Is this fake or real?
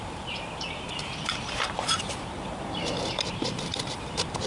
fake